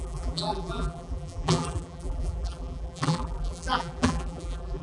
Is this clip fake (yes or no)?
yes